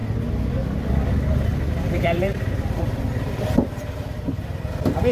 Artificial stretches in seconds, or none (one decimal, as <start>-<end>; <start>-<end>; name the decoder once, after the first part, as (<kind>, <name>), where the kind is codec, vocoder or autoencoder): 1.5-4.6 (vocoder, BigVGAN v2)